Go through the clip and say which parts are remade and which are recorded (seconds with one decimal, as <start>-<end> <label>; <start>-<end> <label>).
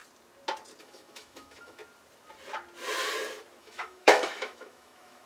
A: 0.0-0.8 recorded; 0.8-1.8 remade; 1.8-3.6 recorded; 3.6-5.3 remade